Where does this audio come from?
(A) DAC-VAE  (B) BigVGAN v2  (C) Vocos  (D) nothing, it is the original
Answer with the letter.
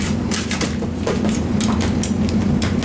B